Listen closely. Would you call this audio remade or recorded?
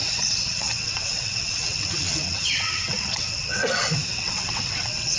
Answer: remade